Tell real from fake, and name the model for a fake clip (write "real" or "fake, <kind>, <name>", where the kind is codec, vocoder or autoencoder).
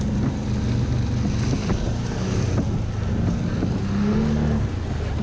real